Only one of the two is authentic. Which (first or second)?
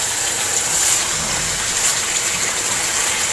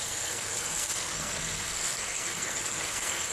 first